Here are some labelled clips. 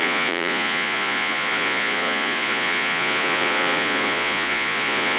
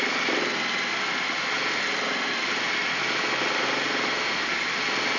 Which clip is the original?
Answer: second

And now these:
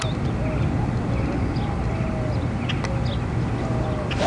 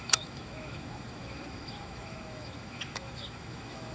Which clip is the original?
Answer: first